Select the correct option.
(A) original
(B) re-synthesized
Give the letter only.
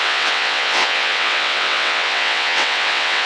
B